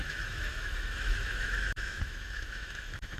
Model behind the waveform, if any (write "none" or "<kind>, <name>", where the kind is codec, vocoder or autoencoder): autoencoder, DAC-VAE